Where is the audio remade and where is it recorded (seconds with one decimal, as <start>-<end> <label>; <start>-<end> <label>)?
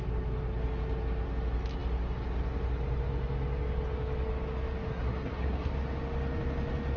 0.0-4.9 recorded; 4.9-5.7 remade; 5.7-7.0 recorded